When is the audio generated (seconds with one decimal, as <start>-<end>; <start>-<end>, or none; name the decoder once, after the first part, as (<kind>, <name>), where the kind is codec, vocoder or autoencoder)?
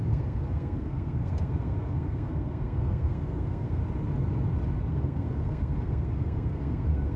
0.0-3.8 (codec, SNAC); 4.9-7.2